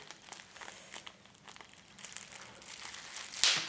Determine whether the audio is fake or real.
real